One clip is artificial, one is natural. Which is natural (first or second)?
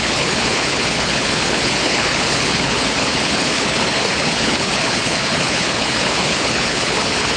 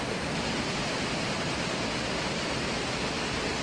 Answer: second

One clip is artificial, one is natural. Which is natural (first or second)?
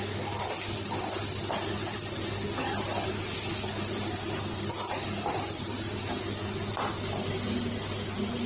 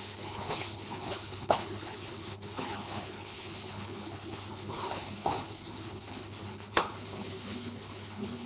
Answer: first